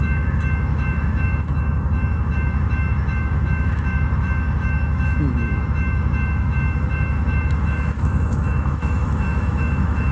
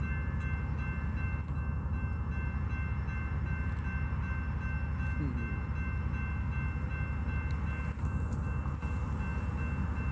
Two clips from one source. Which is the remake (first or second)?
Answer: first